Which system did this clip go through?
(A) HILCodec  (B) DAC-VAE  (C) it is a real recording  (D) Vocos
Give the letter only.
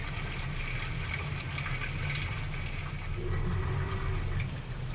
C